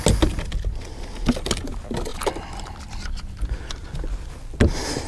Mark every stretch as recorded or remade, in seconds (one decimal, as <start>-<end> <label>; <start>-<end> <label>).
0.0-5.1 recorded